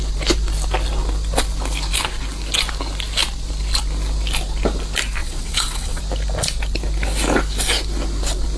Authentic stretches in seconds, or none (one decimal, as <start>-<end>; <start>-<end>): 0.0-5.2; 6.0-8.6